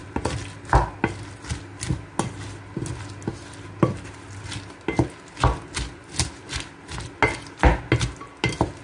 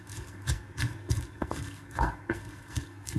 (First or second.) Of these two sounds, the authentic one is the first